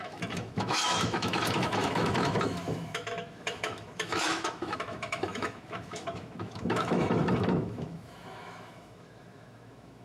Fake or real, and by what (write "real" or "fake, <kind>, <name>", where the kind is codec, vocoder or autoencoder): fake, autoencoder, DAC-VAE